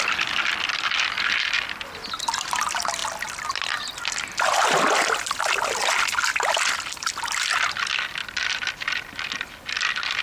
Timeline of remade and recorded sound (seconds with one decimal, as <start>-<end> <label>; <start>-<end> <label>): 0.0-8.2 recorded; 8.2-8.7 remade; 8.7-10.2 recorded